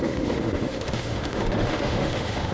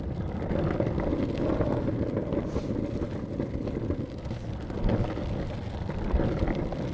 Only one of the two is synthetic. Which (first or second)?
first